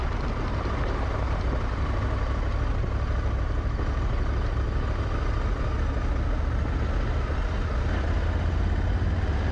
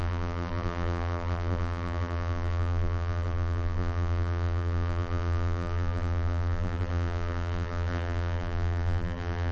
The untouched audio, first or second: first